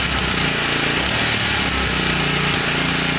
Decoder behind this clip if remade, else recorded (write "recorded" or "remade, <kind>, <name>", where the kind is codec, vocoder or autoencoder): recorded